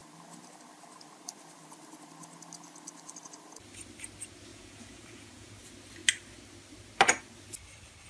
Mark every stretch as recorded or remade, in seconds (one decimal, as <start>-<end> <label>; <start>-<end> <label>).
0.0-4.5 recorded; 4.5-5.5 remade; 5.5-8.1 recorded